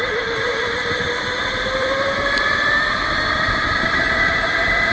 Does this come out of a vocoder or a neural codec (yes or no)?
yes